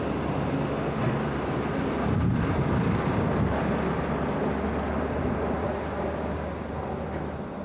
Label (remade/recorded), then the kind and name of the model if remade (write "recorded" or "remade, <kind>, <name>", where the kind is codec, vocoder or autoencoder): recorded